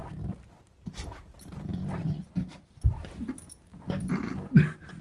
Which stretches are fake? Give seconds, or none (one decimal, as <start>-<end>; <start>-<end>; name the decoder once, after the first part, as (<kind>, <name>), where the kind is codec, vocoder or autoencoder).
none